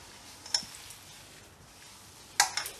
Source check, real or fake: real